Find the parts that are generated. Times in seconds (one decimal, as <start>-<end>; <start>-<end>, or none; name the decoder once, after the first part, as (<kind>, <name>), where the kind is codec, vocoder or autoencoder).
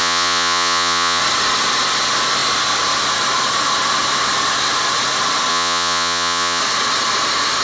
0.0-1.2 (vocoder, Vocos); 5.5-6.6